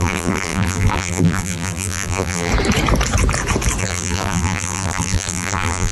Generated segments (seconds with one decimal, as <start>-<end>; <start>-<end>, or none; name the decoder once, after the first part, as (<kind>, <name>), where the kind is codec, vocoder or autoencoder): 0.0-2.5 (vocoder, BigVGAN v2); 3.8-5.9

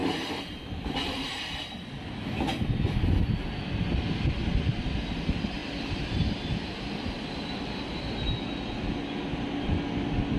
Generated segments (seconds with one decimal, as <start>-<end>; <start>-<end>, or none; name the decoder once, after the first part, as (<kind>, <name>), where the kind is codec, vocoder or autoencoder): 0.0-1.4 (vocoder, BigVGAN v2); 5.6-8.4

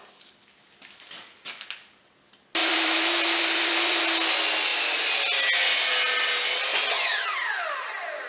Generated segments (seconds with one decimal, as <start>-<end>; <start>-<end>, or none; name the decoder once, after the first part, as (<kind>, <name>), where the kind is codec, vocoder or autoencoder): 2.6-4.0 (vocoder, BigVGAN v2); 4.7-5.9

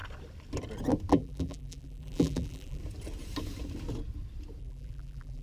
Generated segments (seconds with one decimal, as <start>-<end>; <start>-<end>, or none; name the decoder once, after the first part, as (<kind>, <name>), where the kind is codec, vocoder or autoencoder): 1.1-2.8 (vocoder, BigVGAN v2); 4.6-5.4

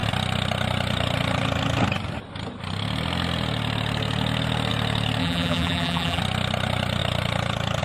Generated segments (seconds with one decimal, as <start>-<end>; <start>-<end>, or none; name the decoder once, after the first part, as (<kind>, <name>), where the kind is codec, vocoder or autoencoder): 5.2-6.2 (vocoder, BigVGAN v2)

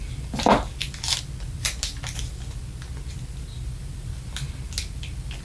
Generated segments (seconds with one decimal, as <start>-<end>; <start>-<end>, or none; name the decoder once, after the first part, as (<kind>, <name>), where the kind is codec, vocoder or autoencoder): none

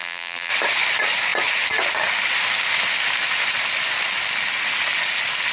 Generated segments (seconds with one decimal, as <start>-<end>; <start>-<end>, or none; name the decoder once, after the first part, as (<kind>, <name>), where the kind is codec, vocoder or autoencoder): 0.0-0.5 (vocoder, BigVGAN v2)

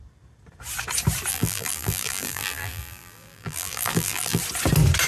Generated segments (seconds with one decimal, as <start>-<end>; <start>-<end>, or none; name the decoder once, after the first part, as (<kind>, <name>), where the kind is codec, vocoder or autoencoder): 1.3-4.4 (vocoder, BigVGAN v2)